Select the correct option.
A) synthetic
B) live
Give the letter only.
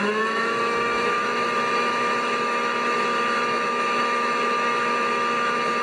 A